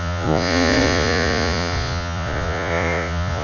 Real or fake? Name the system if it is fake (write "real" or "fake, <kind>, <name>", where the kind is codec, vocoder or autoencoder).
fake, vocoder, Vocos